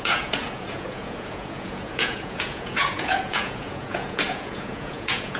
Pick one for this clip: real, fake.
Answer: fake